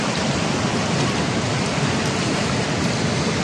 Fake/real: fake